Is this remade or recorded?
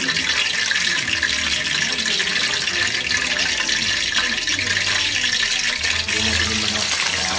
recorded